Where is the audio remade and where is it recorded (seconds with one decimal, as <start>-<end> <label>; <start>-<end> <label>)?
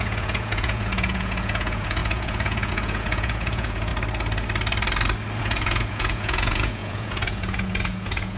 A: 0.0-3.9 remade; 3.9-5.4 recorded; 5.4-8.4 remade